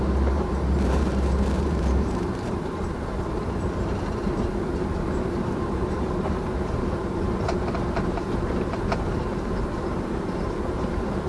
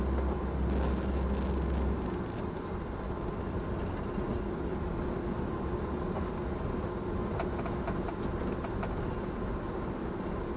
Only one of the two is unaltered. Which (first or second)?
second